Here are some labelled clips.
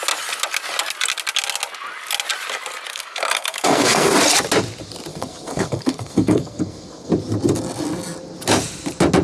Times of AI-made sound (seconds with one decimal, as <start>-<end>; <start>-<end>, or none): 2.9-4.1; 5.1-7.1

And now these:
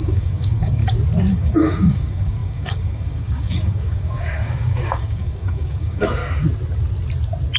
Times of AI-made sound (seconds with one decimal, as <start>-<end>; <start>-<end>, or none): 0.0-0.8; 1.3-6.2

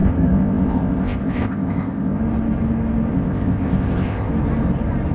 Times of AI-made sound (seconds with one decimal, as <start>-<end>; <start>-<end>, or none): 0.0-2.2; 3.1-4.3